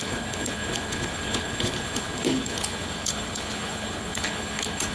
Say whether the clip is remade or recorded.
remade